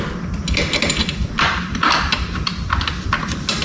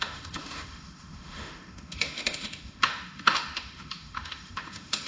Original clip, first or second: first